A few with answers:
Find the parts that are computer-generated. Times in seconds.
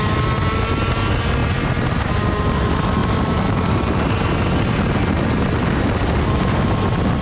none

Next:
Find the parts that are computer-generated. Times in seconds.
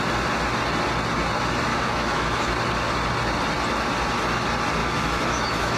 1.7-2.5 (autoencoder, DAC-VAE); 4.8-5.8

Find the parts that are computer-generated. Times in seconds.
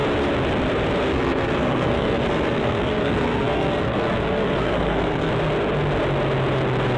1.1-5.3 (codec, SNAC)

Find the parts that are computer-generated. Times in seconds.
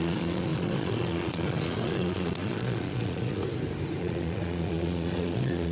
0.0-3.4 (vocoder, Vocos); 4.0-5.7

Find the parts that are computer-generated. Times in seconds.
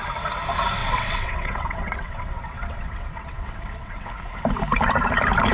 0.8-4.1 (vocoder, WaveNeXt)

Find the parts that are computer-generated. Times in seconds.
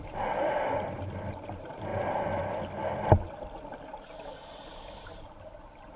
none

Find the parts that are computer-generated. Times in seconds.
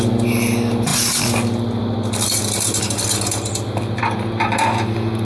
0.9-4.0 (vocoder, BigVGAN v2)